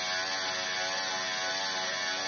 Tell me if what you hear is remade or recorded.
recorded